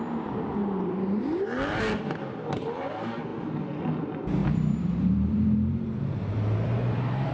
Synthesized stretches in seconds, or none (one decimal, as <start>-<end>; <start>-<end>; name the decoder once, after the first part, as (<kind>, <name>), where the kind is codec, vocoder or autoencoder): 0.0-0.6 (vocoder, BigVGAN v2); 2.0-3.3; 3.9-7.3